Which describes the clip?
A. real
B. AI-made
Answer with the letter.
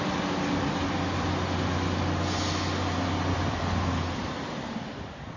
A